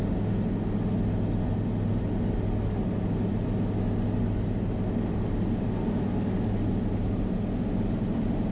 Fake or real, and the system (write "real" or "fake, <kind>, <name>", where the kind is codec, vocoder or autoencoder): real